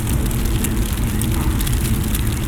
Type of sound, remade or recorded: recorded